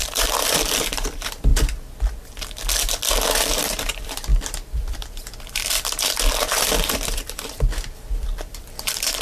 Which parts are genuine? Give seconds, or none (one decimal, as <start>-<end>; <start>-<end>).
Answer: 1.5-3.4